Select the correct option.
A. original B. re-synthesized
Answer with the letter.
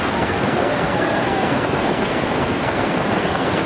B